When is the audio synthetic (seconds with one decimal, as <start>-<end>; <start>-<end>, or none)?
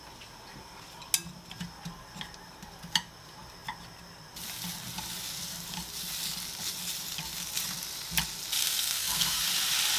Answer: 8.6-9.4